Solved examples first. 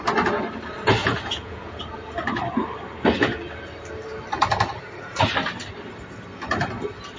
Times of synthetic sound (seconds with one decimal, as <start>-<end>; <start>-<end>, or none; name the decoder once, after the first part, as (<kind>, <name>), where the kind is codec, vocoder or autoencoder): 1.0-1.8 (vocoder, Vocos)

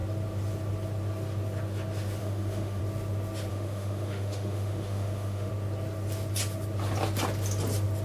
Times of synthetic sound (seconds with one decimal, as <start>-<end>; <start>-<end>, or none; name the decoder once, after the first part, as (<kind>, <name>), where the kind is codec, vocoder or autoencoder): 2.2-2.8 (autoencoder, DAC-VAE); 3.5-5.5

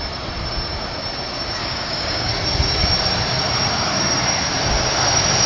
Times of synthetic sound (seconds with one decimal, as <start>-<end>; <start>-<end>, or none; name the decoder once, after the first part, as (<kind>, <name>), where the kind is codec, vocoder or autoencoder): 1.6-2.3 (codec, DAC)

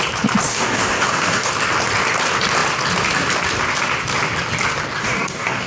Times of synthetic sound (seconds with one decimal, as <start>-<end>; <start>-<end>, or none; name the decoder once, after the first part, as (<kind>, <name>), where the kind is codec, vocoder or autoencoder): 0.5-1.5 (codec, DAC); 5.0-5.7

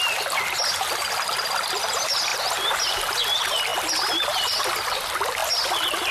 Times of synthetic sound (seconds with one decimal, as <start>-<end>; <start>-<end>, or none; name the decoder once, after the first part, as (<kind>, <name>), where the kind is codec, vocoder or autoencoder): none

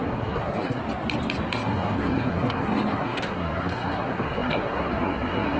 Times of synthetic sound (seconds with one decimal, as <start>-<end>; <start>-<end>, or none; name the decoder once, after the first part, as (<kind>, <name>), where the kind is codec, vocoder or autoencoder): 0.0-0.8 (codec, SNAC); 1.5-5.6

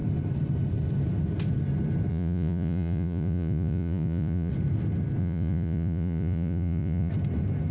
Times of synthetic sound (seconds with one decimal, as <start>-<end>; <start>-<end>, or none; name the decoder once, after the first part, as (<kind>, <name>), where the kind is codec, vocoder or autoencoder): 2.1-4.5 (vocoder, Vocos); 5.2-7.1

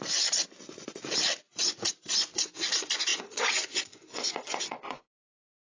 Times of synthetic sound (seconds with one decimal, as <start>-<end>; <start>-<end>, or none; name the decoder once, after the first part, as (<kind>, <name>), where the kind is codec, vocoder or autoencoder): 3.1-5.0 (vocoder, Vocos)